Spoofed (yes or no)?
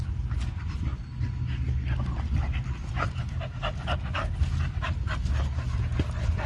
no